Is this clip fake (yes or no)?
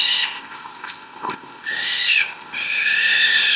yes